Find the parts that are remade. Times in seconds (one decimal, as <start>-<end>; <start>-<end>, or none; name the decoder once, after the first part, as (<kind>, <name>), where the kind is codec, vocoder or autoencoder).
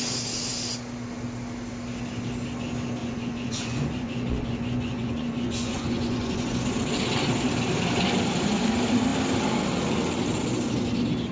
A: 3.0-6.6 (vocoder, Vocos)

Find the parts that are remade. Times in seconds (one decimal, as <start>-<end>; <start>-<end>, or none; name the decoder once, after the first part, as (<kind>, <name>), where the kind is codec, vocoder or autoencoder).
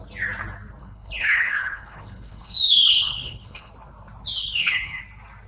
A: 0.8-3.7 (codec, HILCodec); 4.4-5.0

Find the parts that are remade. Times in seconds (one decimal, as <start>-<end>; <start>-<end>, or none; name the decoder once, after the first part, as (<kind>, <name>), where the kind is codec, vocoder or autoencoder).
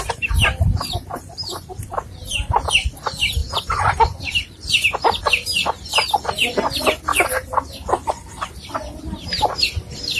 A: 0.0-7.1 (vocoder, BigVGAN v2); 8.3-10.2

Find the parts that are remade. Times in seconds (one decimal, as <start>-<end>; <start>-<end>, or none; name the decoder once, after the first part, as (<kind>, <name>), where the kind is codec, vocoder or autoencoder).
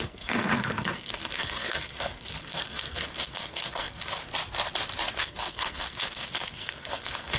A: 0.0-4.2 (codec, SNAC); 5.2-7.4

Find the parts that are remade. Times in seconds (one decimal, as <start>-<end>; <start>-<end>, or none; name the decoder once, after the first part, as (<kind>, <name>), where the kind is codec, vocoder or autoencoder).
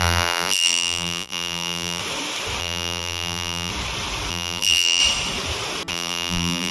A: 0.0-2.0 (vocoder, BigVGAN v2); 2.6-3.7; 4.3-5.0; 5.9-6.7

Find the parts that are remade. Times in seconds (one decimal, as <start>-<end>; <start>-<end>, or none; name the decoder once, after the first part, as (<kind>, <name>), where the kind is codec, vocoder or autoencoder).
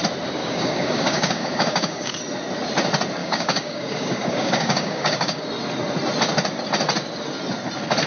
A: 0.4-2.2 (codec, DAC); 3.2-5.4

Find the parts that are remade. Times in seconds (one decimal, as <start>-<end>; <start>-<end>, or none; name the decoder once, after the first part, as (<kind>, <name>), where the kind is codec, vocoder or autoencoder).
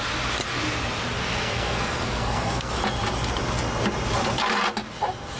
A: 1.2-2.7 (codec, SNAC)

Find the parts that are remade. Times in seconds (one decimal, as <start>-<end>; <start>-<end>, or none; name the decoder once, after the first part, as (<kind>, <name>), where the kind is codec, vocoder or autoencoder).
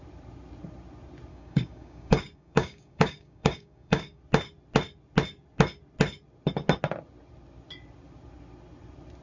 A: 1.3-4.2 (codec, DAC)